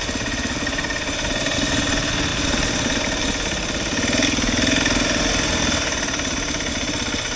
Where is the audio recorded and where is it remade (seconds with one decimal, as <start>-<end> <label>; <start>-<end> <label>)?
0.0-7.4 recorded